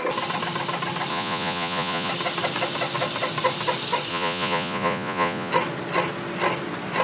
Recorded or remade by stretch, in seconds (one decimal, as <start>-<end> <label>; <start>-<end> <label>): 0.0-1.1 recorded; 1.1-2.1 remade; 2.1-4.1 recorded; 4.1-5.5 remade; 5.5-7.0 recorded